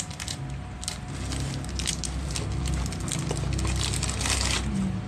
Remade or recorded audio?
recorded